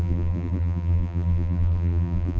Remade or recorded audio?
remade